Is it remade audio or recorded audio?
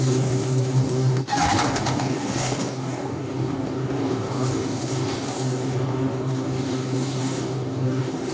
remade